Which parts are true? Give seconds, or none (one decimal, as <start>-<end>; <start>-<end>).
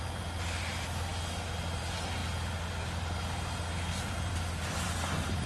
0.0-4.6